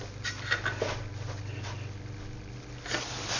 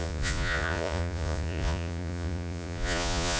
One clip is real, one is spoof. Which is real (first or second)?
first